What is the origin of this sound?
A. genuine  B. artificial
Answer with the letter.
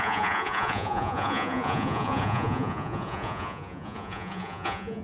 B